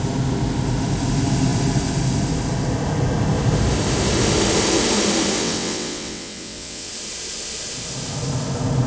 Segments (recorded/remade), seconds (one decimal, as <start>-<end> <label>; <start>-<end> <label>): 0.0-5.4 recorded; 5.4-6.9 remade; 6.9-8.9 recorded